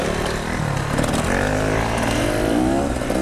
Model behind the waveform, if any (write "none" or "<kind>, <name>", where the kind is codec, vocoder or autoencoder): none